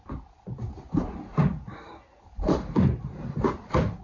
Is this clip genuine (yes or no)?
yes